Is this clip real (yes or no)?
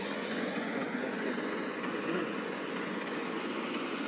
no